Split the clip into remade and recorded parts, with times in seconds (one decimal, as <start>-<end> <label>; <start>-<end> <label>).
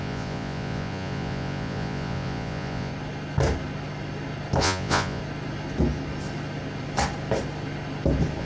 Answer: 0.0-2.9 remade; 2.9-4.6 recorded; 4.6-5.2 remade; 5.2-8.4 recorded